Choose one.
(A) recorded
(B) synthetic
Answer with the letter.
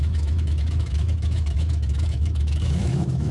B